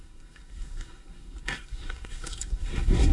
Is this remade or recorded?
remade